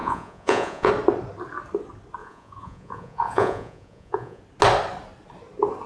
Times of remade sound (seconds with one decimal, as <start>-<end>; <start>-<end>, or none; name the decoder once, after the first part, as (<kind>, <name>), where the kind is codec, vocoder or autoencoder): 0.0-0.9 (vocoder, Vocos); 2.2-4.4